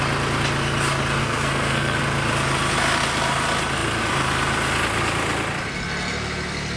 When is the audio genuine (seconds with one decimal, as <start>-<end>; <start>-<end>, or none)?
0.0-1.2; 2.0-6.8